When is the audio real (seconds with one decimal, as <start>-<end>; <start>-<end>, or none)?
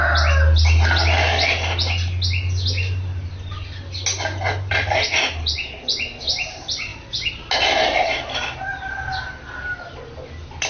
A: 0.0-10.7